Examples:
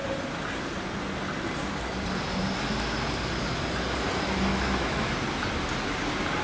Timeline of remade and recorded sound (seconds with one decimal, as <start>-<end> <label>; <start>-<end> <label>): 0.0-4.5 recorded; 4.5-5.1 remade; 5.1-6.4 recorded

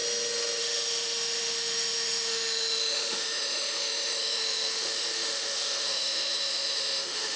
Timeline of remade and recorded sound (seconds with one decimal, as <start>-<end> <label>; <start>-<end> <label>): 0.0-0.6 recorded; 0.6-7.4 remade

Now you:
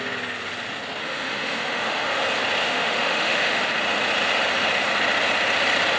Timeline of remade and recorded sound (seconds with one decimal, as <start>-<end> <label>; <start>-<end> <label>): 0.0-1.0 recorded; 1.0-2.2 remade; 2.2-2.6 recorded; 2.6-3.6 remade; 3.6-6.0 recorded